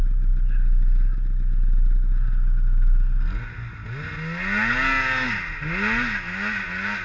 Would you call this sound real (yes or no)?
yes